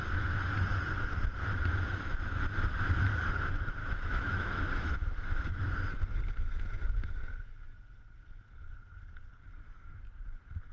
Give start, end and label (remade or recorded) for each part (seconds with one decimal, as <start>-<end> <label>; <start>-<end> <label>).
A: 0.0-3.8 recorded; 3.8-5.7 remade; 5.7-10.7 recorded